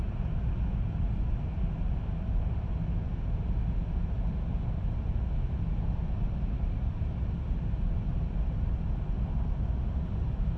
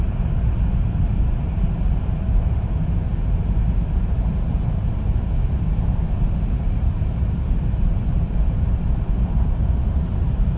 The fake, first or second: second